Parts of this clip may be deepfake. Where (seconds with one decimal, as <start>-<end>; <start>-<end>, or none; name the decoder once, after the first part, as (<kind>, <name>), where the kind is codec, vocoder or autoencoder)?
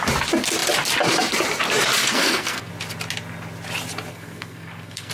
2.0-2.7 (codec, SNAC); 4.1-5.1